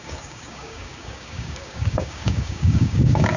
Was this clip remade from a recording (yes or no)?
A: yes